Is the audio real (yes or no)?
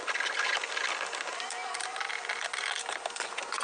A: yes